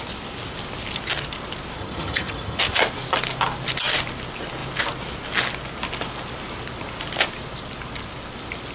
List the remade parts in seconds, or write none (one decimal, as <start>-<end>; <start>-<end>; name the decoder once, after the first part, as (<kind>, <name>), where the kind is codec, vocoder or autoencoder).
1.8-2.6 (vocoder, HiFi-GAN)